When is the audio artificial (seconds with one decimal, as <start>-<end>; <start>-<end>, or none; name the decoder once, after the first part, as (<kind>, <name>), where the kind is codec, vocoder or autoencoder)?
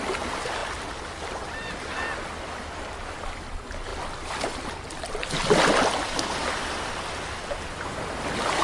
none